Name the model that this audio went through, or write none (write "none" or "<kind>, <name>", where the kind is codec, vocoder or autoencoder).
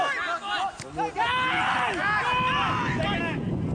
none